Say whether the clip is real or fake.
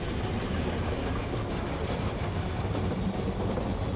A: real